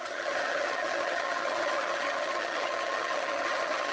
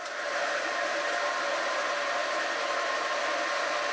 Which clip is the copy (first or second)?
first